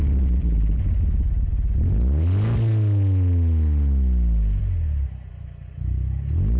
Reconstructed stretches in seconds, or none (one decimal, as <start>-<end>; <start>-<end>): 0.4-1.5; 4.6-5.7